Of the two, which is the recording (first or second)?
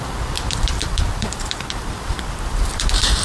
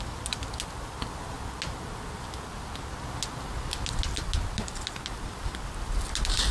second